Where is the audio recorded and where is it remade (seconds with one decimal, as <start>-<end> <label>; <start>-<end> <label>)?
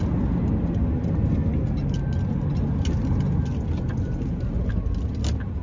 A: 0.0-5.6 recorded